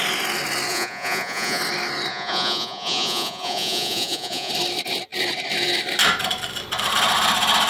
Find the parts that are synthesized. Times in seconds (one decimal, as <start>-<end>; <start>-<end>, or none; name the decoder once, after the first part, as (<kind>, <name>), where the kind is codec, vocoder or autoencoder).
0.7-1.6 (vocoder, Vocos); 2.1-4.5